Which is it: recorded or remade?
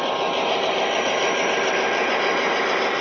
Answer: recorded